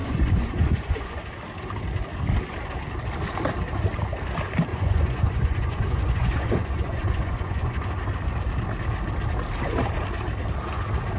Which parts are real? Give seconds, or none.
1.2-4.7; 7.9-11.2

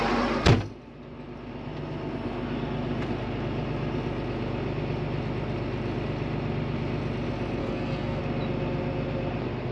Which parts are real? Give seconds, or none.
0.0-7.6; 8.2-9.7

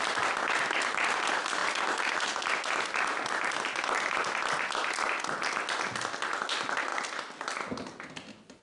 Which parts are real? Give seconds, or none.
0.0-8.6

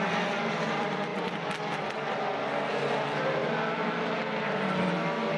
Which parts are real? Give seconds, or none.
0.0-5.4

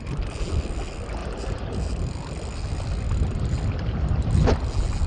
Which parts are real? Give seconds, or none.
0.0-1.2; 4.3-5.1

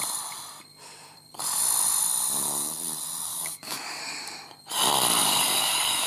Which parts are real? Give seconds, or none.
0.0-3.3; 4.0-5.2

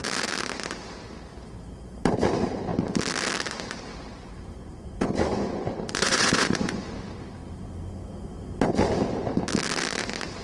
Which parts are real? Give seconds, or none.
0.0-4.6; 6.8-10.4

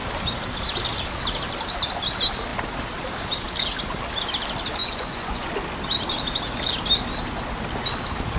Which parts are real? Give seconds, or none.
0.0-4.8; 5.5-8.4